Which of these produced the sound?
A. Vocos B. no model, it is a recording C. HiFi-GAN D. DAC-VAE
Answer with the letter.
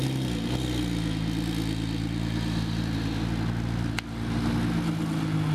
B